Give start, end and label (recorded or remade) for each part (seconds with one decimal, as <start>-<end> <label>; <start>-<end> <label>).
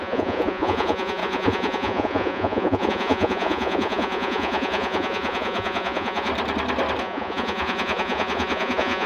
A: 0.0-6.3 remade; 6.3-7.0 recorded; 7.0-9.1 remade